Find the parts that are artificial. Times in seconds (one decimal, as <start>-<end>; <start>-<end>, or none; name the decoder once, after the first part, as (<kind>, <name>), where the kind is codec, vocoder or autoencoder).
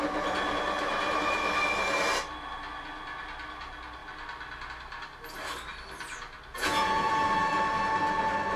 6.5-7.1 (vocoder, Vocos)